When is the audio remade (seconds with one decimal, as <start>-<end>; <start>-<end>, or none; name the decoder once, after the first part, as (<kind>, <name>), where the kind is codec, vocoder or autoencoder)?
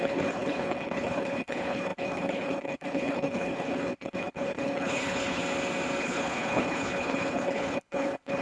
0.0-5.4 (codec, HILCodec); 6.0-8.4